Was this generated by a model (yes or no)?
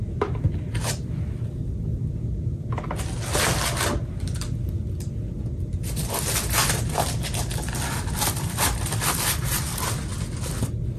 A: no